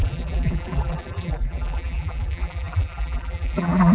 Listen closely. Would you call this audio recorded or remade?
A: remade